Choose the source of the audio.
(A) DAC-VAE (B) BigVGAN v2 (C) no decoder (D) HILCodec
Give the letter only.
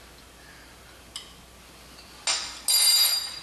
C